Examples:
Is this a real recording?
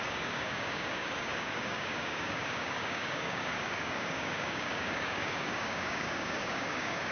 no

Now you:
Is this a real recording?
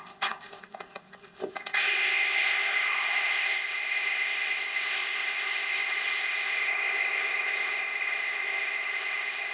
no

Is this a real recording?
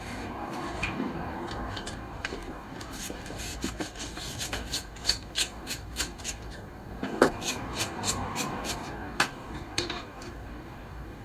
no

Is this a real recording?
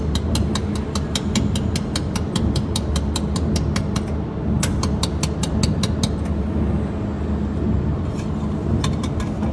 yes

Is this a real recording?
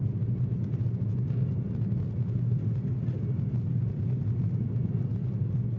yes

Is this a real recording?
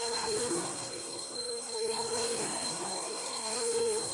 no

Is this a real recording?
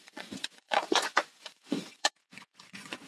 no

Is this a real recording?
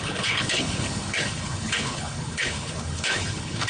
no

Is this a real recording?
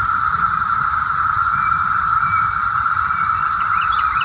no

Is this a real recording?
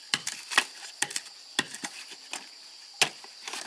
yes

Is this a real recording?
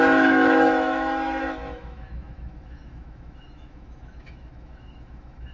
no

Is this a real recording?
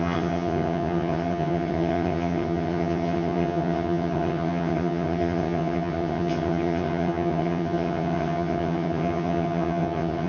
no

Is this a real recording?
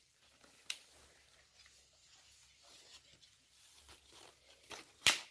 yes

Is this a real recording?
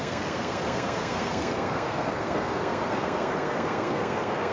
no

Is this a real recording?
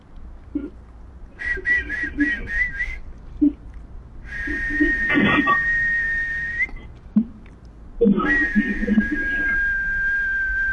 yes